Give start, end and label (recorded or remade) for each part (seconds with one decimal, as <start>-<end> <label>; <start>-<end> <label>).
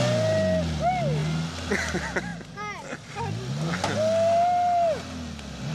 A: 0.0-5.7 recorded